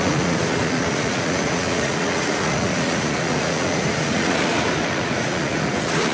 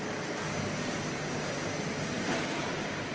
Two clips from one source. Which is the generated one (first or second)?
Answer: first